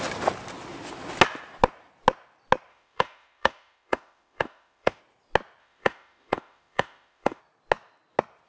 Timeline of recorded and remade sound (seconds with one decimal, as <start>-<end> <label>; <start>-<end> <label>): 0.0-2.7 recorded; 2.7-5.0 remade; 5.0-5.6 recorded; 5.6-7.4 remade; 7.4-8.5 recorded